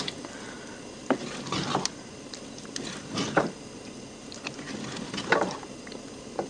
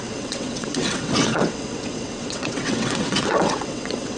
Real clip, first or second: first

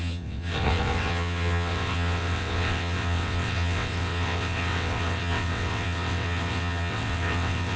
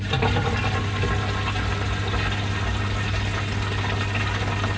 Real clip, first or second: second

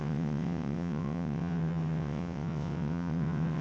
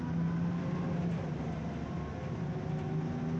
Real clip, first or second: second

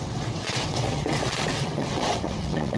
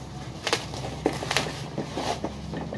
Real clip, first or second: second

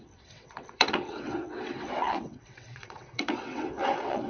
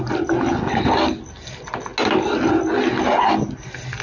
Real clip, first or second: second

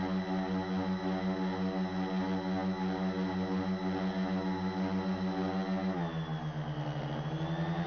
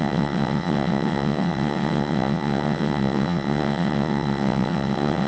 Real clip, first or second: first